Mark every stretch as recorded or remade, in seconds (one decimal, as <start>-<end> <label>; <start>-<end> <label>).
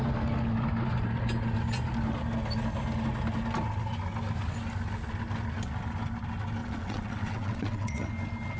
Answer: 0.0-6.6 recorded; 6.6-8.1 remade; 8.1-8.6 recorded